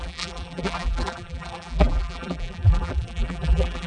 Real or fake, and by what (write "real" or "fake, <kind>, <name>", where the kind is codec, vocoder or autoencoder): fake, vocoder, BigVGAN v2